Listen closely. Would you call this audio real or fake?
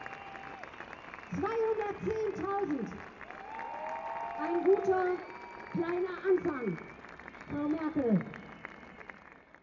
real